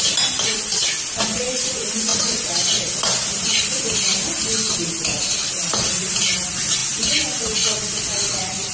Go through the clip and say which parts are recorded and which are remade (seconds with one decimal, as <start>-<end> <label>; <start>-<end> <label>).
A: 0.0-8.7 recorded

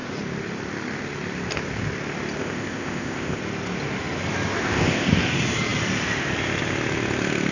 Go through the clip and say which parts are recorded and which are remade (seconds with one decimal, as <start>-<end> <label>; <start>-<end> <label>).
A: 0.0-2.4 recorded; 2.4-3.4 remade; 3.4-4.6 recorded; 4.6-5.1 remade; 5.1-7.5 recorded

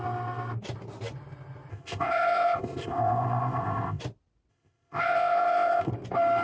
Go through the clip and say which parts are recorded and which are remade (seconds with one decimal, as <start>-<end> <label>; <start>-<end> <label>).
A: 0.0-1.7 recorded; 1.7-4.0 remade; 4.0-4.5 recorded; 4.5-5.9 remade; 5.9-6.4 recorded

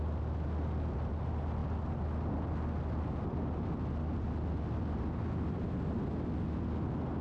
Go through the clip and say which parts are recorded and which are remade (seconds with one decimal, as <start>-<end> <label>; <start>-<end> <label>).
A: 0.0-7.2 recorded

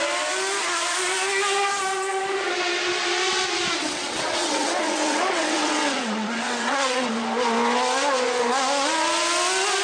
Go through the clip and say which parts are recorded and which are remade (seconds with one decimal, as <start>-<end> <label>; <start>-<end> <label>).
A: 0.0-3.8 recorded; 3.8-7.1 remade; 7.1-9.8 recorded

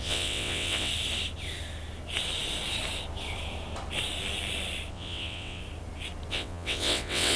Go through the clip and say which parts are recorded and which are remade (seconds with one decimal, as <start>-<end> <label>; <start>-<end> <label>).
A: 0.0-0.9 remade; 0.9-4.9 recorded; 4.9-5.6 remade; 5.6-6.3 recorded; 6.3-7.4 remade

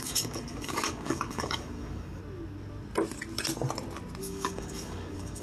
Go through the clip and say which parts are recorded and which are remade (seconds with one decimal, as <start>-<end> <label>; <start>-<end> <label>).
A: 0.0-2.2 remade; 2.2-4.2 recorded; 4.2-5.4 remade

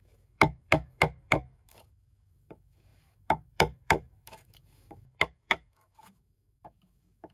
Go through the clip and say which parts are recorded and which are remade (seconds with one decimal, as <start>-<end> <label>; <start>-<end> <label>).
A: 0.0-7.3 remade